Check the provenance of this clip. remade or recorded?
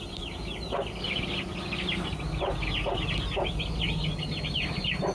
recorded